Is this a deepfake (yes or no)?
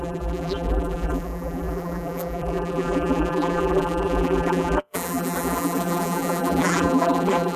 yes